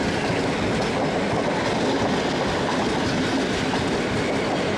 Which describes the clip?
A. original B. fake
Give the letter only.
A